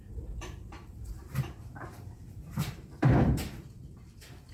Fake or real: fake